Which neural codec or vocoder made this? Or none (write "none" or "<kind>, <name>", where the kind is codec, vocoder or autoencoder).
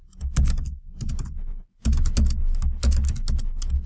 none